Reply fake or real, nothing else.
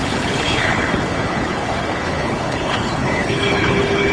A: fake